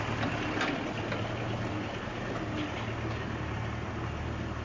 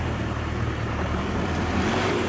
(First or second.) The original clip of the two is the first